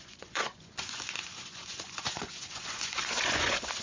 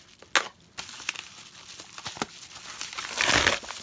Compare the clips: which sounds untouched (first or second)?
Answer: second